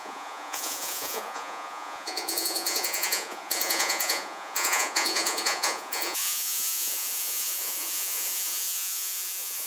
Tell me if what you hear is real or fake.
fake